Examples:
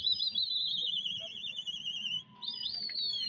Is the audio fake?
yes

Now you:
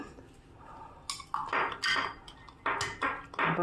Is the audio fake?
no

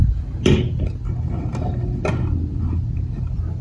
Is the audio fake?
no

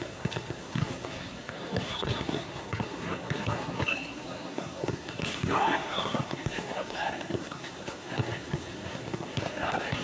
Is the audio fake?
yes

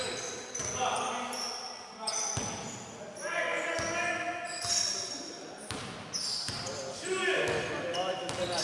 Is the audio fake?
no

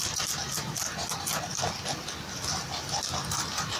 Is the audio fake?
no